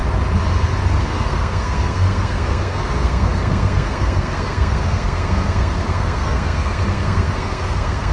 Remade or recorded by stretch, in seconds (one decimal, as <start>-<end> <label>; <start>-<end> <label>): 0.0-1.0 recorded; 1.0-8.1 remade